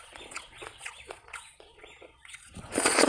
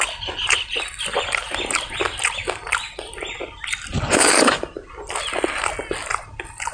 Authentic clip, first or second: second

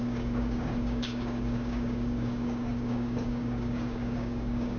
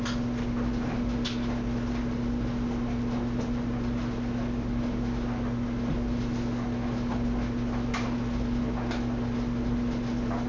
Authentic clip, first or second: second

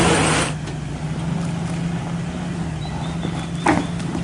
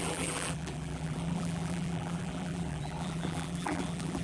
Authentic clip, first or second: first